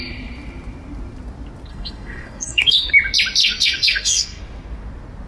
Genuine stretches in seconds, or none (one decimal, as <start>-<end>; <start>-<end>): 0.0-1.7; 2.9-3.4; 4.4-5.3